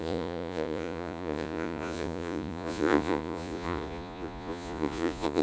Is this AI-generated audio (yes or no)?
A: yes